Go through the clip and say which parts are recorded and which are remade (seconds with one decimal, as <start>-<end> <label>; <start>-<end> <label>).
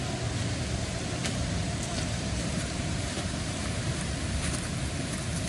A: 0.0-1.2 recorded; 1.2-4.5 remade; 4.5-5.5 recorded